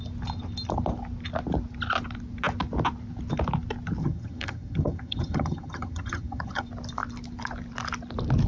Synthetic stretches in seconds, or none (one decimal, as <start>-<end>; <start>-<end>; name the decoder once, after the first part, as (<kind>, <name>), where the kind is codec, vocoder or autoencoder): 4.0-6.6 (vocoder, HiFi-GAN)